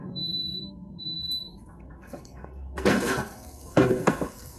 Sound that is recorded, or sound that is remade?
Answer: remade